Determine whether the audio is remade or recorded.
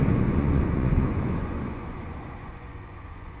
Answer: remade